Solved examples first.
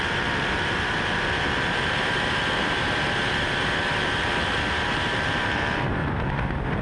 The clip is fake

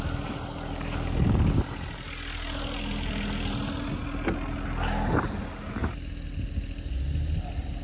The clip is real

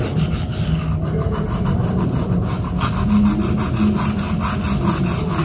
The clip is real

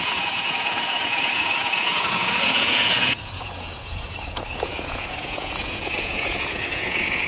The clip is fake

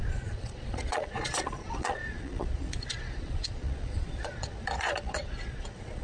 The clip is fake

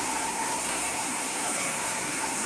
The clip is fake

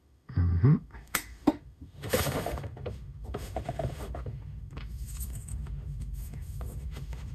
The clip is fake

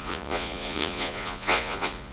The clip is fake